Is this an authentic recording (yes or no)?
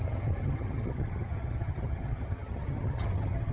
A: no